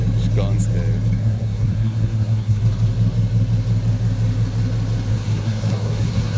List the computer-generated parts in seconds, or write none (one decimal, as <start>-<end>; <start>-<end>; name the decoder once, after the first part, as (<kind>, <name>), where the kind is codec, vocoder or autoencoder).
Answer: 1.2-2.6 (codec, SNAC); 5.1-6.4